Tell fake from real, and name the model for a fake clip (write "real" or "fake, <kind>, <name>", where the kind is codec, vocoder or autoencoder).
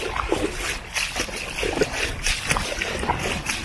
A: real